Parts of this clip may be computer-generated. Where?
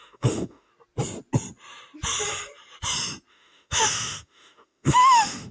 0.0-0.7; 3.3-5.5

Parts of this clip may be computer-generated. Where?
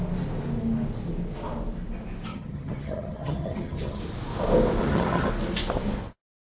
2.3-4.0; 4.8-5.3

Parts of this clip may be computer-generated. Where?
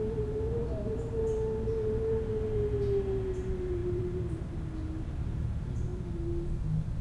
3.8-4.5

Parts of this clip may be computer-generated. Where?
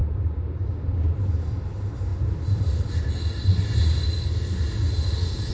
none